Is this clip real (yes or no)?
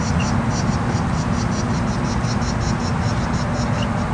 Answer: yes